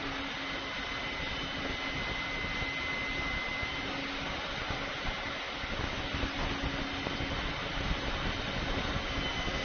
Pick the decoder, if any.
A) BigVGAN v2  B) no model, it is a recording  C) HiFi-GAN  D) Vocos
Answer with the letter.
B